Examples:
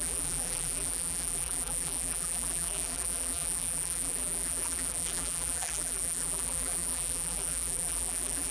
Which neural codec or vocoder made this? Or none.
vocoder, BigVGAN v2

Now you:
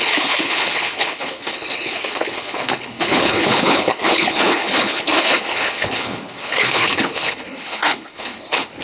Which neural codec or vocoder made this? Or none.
codec, HILCodec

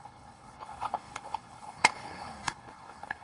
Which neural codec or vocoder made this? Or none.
codec, HILCodec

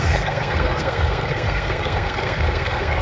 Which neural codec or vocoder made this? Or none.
codec, SNAC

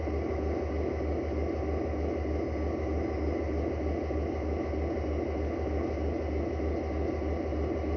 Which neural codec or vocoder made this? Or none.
none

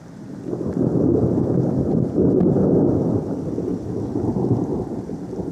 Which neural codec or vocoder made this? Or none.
vocoder, BigVGAN v2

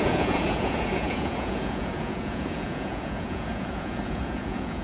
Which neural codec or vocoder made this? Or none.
vocoder, Vocos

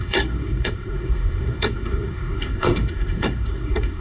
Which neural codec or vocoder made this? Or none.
codec, SNAC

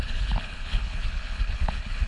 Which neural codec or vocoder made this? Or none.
codec, HILCodec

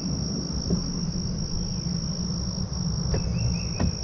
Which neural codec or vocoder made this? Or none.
none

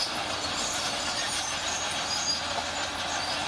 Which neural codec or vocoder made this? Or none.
none